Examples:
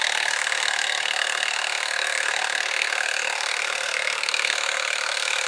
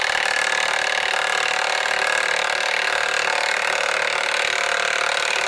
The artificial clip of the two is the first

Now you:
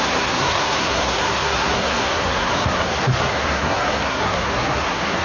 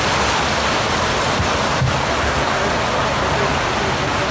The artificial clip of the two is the first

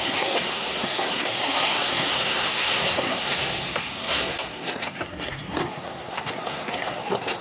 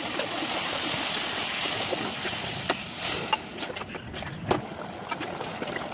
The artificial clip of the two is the first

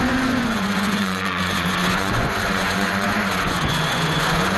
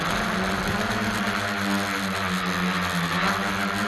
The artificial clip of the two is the first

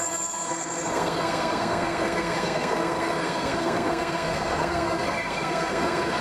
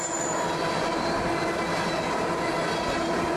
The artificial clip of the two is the first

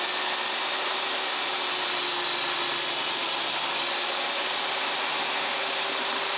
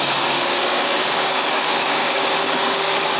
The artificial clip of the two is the second